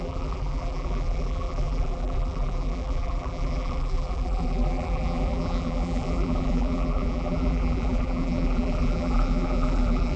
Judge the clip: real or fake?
fake